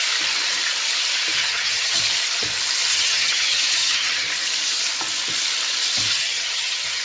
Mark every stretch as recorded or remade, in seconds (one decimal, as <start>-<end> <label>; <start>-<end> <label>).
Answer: 0.0-1.4 recorded; 1.4-2.0 remade; 2.0-2.9 recorded; 2.9-4.3 remade; 4.3-6.1 recorded; 6.1-7.0 remade